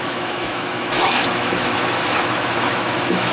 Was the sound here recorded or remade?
remade